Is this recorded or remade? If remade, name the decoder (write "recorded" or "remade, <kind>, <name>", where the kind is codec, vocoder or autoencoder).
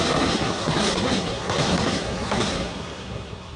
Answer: remade, codec, SNAC